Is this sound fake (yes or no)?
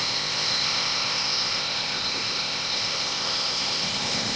yes